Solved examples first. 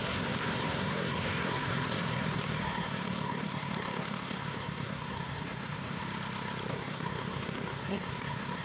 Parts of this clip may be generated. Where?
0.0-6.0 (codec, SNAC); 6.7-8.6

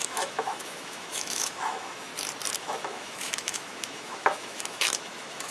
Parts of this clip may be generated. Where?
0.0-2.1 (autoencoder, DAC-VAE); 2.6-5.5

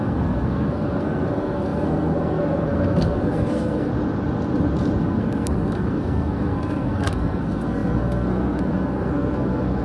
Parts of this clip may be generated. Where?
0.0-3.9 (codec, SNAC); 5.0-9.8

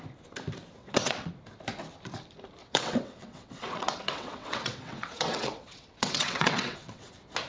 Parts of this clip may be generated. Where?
0.8-1.3 (vocoder, WaveNeXt); 2.6-7.1

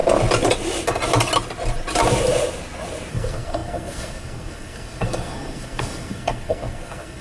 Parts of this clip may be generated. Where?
3.1-7.2 (codec, SNAC)

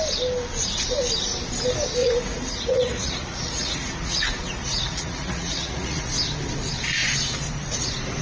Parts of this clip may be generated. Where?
2.0-6.1 (vocoder, Vocos)

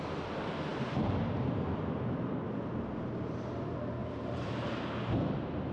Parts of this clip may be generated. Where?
0.7-1.8 (vocoder, BigVGAN v2); 4.0-5.0